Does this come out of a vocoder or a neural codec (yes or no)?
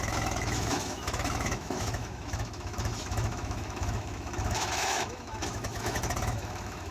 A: yes